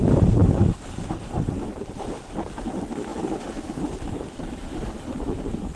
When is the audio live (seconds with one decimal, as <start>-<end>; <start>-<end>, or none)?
0.0-5.8